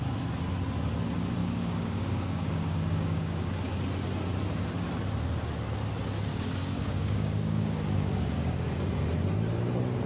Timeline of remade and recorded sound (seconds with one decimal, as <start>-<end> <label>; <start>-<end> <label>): 0.0-1.4 recorded; 1.4-3.7 remade; 3.7-6.3 recorded; 6.3-8.6 remade; 8.6-10.1 recorded